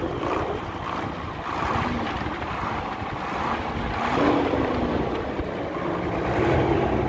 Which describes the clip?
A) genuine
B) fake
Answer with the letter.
A